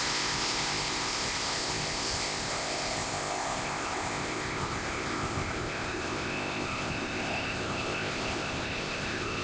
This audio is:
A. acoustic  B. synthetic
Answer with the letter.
B